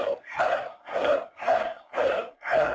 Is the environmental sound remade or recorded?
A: remade